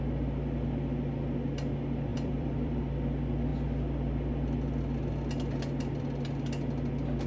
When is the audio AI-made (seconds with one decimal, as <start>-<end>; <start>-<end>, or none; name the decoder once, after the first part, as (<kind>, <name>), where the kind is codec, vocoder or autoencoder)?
2.1-2.8 (vocoder, BigVGAN v2)